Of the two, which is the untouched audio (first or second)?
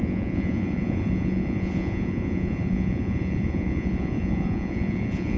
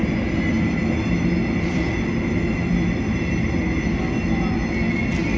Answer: second